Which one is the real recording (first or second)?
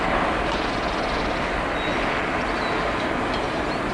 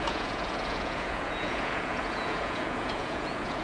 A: first